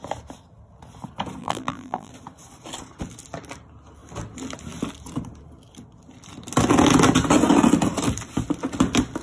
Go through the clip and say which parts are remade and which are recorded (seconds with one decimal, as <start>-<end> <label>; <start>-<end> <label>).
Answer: 0.0-1.4 recorded; 1.4-2.1 remade; 2.1-9.2 recorded